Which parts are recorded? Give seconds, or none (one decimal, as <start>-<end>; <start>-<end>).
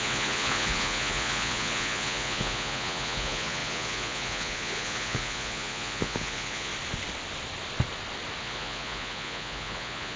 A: 6.7-8.4